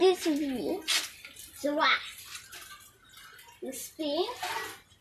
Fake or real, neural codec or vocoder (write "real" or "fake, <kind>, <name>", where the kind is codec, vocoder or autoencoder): real